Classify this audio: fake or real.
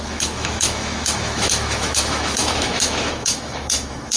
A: fake